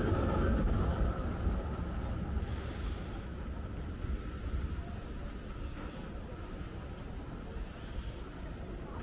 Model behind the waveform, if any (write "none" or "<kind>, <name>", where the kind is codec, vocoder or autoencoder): none